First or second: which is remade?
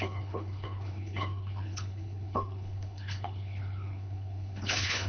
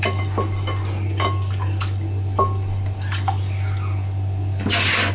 first